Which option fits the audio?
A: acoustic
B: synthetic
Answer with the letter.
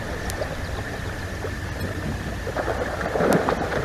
A